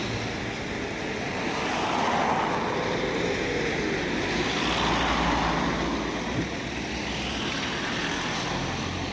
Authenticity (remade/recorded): recorded